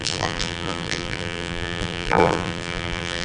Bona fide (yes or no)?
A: no